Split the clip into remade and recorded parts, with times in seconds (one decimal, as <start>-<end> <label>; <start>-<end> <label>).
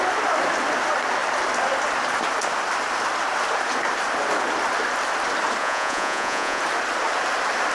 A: 0.0-5.6 recorded; 5.6-6.6 remade; 6.6-7.7 recorded